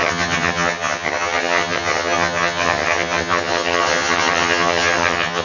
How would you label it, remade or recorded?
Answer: remade